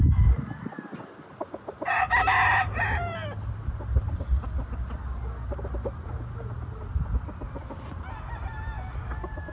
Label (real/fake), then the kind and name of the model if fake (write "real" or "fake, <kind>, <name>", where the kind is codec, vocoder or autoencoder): real